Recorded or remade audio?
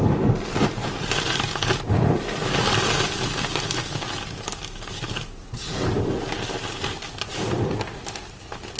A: recorded